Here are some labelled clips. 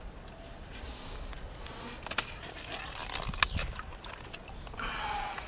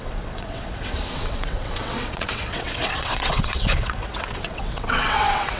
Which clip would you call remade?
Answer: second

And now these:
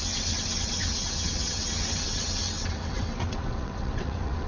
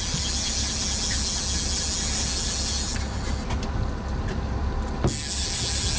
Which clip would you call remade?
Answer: first